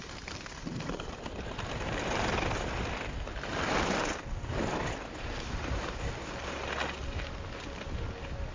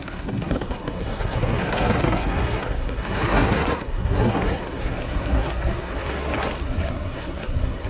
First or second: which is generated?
second